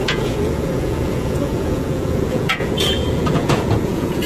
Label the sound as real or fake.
fake